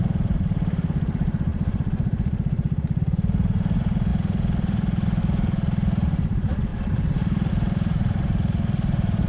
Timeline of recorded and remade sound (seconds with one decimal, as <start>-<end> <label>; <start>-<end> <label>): 0.0-9.3 remade